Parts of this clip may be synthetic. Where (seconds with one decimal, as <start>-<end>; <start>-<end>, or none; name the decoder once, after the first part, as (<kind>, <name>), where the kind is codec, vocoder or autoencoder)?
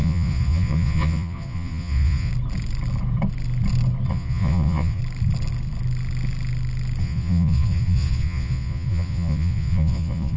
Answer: 0.0-2.3 (vocoder, Vocos); 4.1-5.0; 7.0-10.4